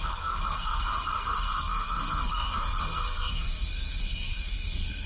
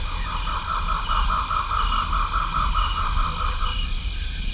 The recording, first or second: second